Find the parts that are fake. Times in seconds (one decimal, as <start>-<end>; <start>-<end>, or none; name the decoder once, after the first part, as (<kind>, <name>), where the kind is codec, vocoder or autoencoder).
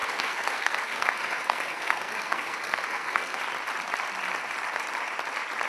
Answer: 0.0-3.4 (codec, SNAC)